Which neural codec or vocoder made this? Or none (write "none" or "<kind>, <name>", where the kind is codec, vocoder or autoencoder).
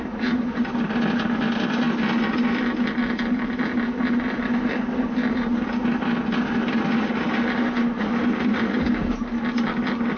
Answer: none